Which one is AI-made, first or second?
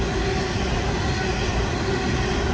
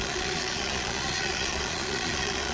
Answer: second